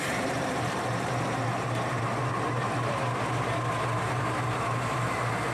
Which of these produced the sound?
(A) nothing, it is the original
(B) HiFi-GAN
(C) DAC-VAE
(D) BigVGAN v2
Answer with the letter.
D